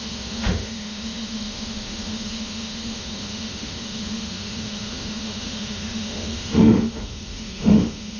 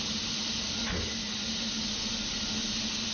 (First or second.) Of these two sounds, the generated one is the first